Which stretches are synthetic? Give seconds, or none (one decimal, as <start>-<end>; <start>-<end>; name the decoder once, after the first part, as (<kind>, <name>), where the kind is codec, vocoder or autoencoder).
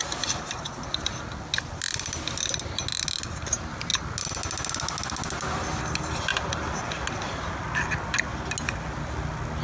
none